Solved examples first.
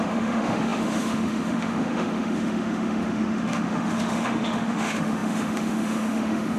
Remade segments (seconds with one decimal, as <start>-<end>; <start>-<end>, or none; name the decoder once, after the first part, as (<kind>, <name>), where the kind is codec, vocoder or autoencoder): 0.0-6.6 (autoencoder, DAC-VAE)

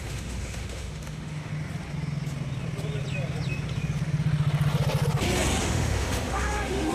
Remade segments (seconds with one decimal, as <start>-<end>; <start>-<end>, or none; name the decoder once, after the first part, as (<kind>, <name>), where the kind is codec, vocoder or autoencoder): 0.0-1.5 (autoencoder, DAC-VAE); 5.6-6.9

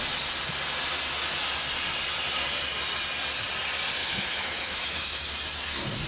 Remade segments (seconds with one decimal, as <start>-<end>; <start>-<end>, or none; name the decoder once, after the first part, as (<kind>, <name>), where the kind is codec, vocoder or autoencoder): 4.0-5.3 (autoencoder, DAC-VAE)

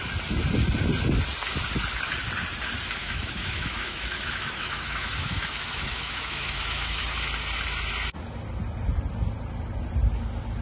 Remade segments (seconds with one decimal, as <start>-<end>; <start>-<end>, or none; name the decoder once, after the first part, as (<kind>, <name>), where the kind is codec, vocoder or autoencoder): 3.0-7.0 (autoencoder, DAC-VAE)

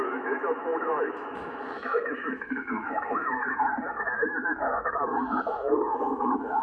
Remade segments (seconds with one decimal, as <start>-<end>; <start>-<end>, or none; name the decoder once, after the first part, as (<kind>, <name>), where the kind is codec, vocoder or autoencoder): 0.0-6.6 (autoencoder, DAC-VAE)